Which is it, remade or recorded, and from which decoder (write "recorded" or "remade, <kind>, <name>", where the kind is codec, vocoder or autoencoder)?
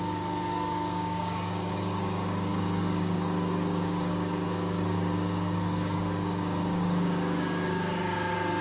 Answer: remade, codec, DAC